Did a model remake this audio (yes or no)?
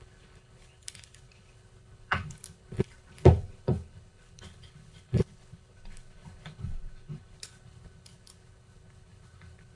yes